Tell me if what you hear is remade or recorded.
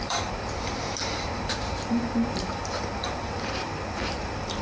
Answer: remade